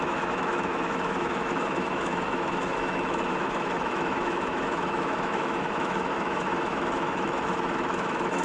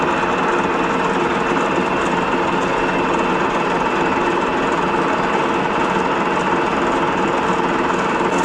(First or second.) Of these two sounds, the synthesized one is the first